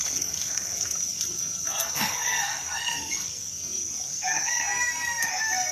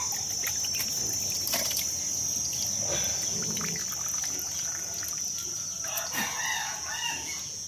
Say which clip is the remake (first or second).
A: first